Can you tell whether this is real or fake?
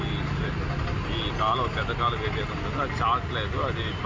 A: real